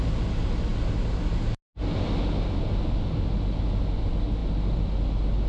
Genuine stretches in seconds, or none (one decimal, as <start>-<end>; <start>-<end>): 0.0-5.5